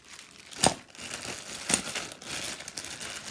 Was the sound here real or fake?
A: real